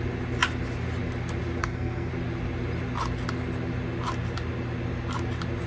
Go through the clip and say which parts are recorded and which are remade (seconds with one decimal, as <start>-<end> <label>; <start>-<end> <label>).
0.0-1.6 recorded; 1.6-2.1 remade; 2.1-5.7 recorded